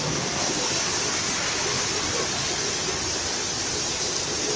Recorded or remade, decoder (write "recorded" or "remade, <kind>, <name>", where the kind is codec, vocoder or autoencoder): recorded